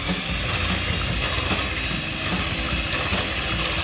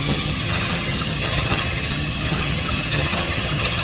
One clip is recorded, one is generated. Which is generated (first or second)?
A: second